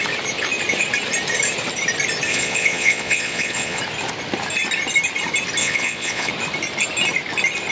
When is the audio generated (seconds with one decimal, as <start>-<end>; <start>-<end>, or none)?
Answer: 2.3-3.8; 5.6-6.3